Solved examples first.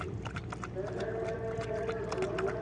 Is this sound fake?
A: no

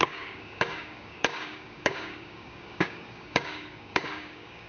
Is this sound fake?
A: yes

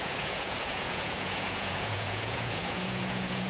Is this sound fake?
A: yes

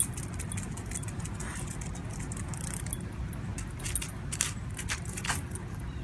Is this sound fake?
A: no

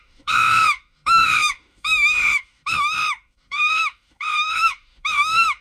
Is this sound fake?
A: yes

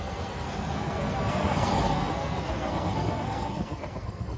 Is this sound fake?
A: yes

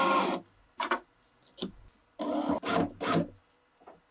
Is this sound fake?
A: no